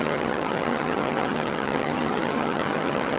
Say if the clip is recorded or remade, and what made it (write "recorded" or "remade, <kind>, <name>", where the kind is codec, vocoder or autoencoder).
remade, vocoder, HiFi-GAN